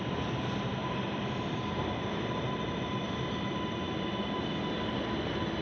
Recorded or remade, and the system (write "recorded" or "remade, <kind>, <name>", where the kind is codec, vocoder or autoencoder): recorded